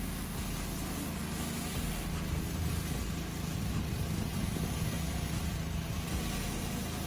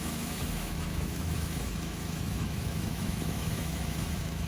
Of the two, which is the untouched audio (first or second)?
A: first